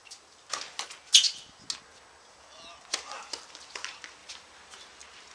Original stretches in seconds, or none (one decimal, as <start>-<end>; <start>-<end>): 0.0-4.2; 4.8-5.3